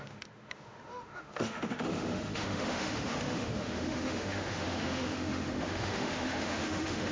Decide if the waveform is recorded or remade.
remade